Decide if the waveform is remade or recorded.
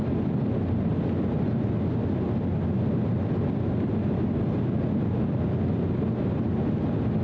recorded